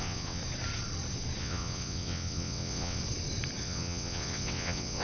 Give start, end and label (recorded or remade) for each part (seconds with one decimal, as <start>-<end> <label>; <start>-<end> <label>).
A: 0.0-0.4 remade; 0.4-1.4 recorded; 1.4-3.0 remade; 3.0-3.6 recorded; 3.6-5.0 remade